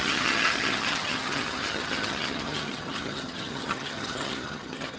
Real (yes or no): no